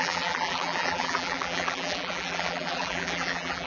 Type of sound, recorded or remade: remade